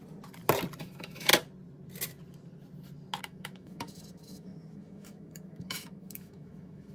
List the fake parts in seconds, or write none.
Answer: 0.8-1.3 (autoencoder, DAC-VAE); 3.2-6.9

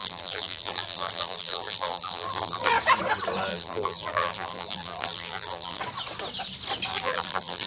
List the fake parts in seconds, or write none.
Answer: 0.0-2.7 (vocoder, BigVGAN v2); 3.5-5.8; 6.9-7.7